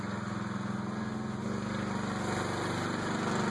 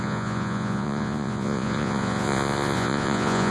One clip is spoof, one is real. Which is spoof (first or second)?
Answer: second